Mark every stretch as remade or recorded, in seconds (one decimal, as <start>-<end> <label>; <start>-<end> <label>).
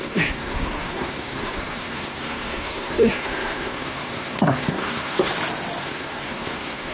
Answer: 0.0-5.3 remade; 5.3-5.8 recorded; 5.8-6.9 remade